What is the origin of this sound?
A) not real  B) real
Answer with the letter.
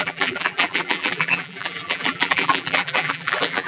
A